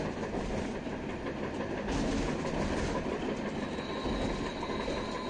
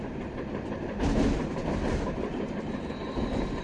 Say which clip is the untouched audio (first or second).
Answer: first